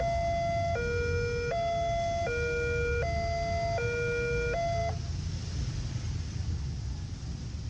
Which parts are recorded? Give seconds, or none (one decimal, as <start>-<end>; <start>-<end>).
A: 0.0-7.7